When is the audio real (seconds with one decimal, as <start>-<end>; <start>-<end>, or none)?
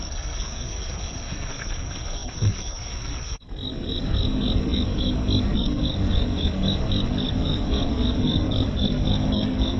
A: none